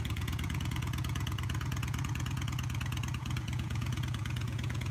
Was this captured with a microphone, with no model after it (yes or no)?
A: no